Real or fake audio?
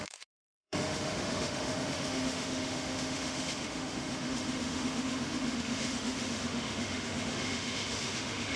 fake